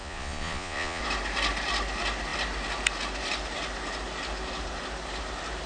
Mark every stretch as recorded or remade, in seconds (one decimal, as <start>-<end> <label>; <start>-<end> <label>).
0.0-1.0 remade; 1.0-5.7 recorded